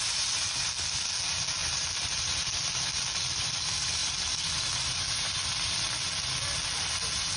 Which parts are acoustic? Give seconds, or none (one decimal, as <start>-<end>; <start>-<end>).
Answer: 0.0-7.4